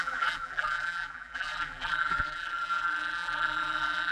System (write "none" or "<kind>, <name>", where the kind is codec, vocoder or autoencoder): vocoder, BigVGAN v2